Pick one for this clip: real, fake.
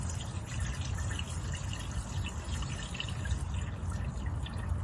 real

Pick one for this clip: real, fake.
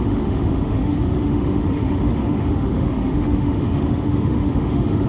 fake